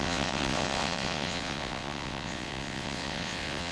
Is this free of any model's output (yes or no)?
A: no